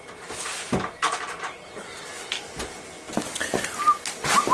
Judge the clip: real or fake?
real